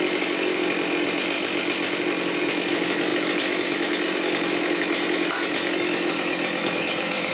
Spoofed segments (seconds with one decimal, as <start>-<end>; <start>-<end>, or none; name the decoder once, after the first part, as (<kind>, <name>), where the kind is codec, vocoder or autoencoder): 0.0-0.6 (autoencoder, DAC-VAE); 2.7-7.3